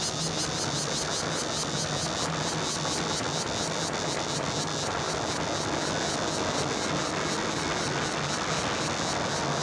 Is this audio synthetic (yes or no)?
no